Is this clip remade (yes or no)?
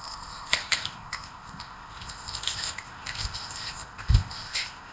yes